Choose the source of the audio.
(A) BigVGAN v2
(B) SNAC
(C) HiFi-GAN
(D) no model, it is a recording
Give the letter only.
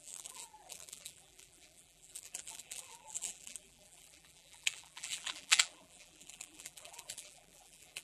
A